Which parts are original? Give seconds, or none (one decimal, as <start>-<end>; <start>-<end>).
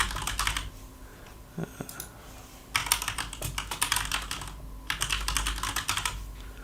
0.0-6.6